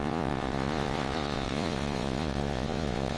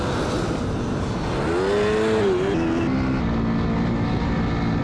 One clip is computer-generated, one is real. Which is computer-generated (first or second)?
first